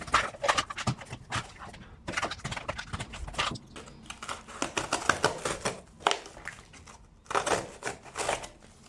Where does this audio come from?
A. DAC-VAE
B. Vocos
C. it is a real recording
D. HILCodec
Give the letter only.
C